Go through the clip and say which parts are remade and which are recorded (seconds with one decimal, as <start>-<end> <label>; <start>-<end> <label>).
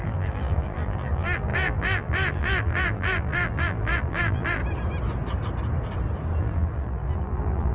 0.0-4.6 remade; 4.6-6.4 recorded; 6.4-7.7 remade